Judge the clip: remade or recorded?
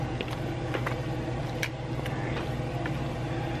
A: recorded